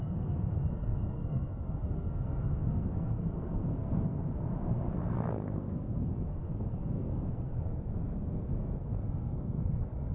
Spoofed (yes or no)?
yes